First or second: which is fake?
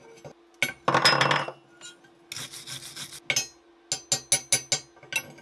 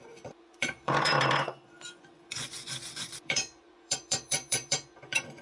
second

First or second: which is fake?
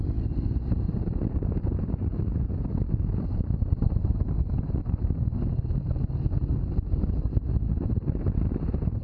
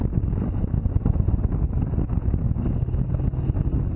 first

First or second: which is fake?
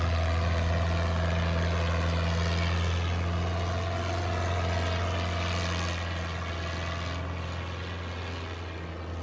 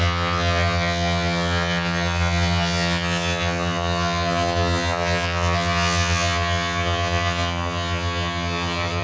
second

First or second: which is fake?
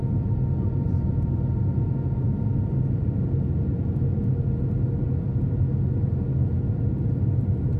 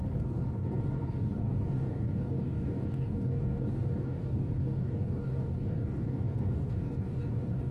second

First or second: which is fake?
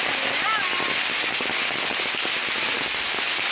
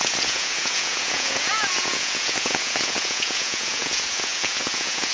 second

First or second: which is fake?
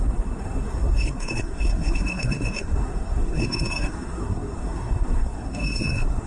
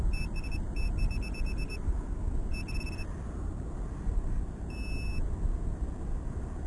first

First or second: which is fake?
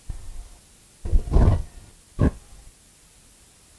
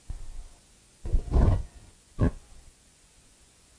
second